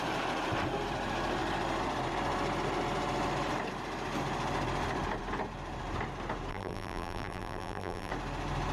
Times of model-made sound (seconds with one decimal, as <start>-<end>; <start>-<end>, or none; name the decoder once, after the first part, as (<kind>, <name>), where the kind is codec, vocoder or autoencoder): 6.5-8.1 (vocoder, BigVGAN v2)